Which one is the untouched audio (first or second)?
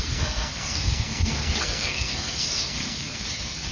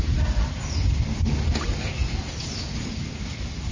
second